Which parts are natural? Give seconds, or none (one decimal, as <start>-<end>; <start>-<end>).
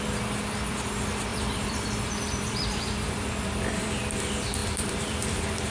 0.0-1.3; 3.9-4.6